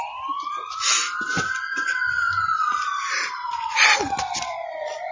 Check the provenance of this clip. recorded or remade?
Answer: recorded